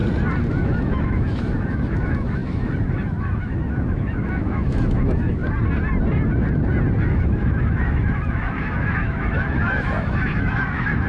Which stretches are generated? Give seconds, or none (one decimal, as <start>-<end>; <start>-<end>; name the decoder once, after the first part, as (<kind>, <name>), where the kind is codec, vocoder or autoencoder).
0.5-5.4 (autoencoder, DAC-VAE); 7.0-11.1